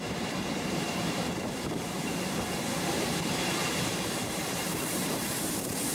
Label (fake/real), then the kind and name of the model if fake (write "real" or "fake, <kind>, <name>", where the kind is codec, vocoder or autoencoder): fake, vocoder, BigVGAN v2